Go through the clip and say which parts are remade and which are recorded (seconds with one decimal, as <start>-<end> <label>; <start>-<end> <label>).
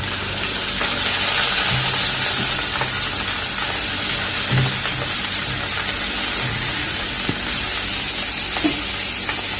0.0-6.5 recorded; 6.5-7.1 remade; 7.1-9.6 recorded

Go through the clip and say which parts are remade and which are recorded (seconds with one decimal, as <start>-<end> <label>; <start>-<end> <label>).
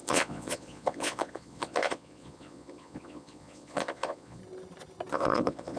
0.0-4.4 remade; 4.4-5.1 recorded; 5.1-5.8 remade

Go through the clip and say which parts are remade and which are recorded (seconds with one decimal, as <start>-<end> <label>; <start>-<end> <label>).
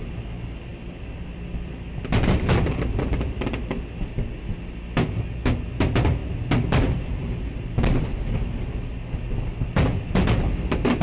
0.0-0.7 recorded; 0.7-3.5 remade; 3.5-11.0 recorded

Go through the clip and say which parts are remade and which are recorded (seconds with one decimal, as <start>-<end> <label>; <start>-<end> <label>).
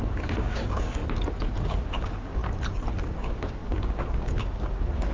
0.0-1.0 remade; 1.0-1.6 recorded; 1.6-2.4 remade; 2.4-2.9 recorded; 2.9-5.1 remade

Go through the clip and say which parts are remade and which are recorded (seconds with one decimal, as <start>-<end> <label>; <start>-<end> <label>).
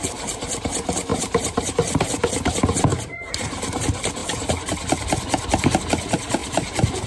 0.0-1.1 recorded; 1.1-1.7 remade; 1.7-2.9 recorded; 2.9-3.8 remade; 3.8-6.4 recorded; 6.4-7.1 remade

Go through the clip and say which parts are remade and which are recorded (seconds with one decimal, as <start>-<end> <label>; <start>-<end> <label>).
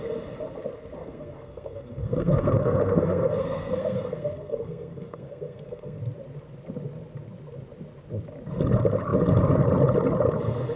0.0-1.0 recorded; 1.0-6.0 remade; 6.0-10.8 recorded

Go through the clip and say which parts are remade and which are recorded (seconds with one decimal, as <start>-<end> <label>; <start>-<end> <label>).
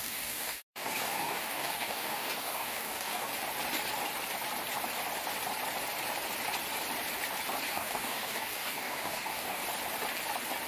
0.0-3.3 remade; 3.3-7.7 recorded; 7.7-9.6 remade; 9.6-10.7 recorded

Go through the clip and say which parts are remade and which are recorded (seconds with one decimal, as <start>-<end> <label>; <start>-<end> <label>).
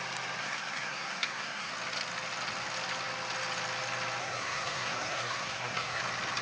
0.0-0.4 recorded; 0.4-1.7 remade; 1.7-4.2 recorded; 4.2-6.0 remade; 6.0-6.4 recorded